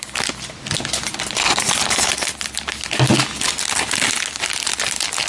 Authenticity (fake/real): real